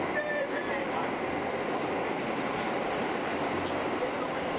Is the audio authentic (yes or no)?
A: yes